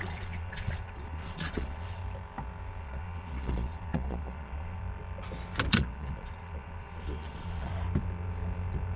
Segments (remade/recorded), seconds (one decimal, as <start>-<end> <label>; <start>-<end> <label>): 0.0-2.0 remade; 2.0-2.8 recorded; 2.8-4.8 remade; 4.8-5.7 recorded; 5.7-7.7 remade; 7.7-9.0 recorded